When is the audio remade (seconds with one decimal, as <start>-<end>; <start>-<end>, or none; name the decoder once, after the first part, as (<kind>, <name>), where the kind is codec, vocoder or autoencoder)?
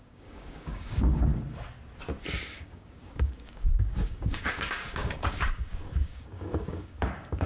0.0-1.3 (codec, DAC); 2.5-7.5